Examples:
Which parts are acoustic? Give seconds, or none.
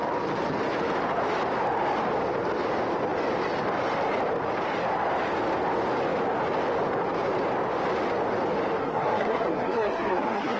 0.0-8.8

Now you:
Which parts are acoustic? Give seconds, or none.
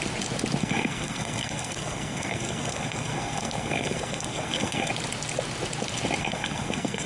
0.0-0.6; 4.9-6.2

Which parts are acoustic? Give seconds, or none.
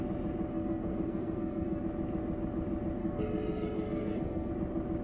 0.0-0.5; 1.8-3.0; 4.5-5.0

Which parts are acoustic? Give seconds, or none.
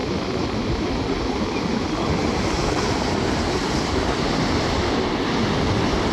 0.0-6.1